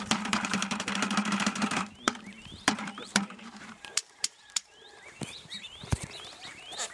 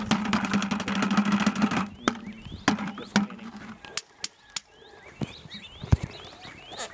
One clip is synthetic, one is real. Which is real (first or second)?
second